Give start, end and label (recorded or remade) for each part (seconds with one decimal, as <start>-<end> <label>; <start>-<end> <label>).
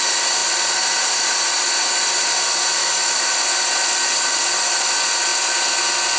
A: 0.0-2.8 recorded; 2.8-3.3 remade; 3.3-6.2 recorded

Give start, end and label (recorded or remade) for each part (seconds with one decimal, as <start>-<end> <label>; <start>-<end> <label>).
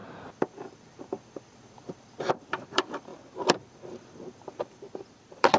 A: 0.0-2.3 recorded; 2.3-3.1 remade; 3.1-4.6 recorded; 4.6-5.6 remade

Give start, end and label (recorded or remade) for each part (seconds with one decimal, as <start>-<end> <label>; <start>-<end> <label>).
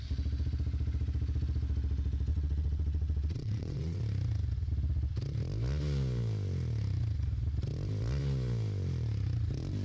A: 0.0-2.3 recorded; 2.3-4.0 remade; 4.0-9.8 recorded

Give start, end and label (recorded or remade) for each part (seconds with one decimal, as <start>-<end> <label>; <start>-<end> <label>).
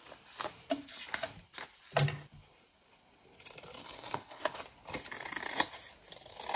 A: 0.0-3.8 recorded; 3.8-4.6 remade; 4.6-6.6 recorded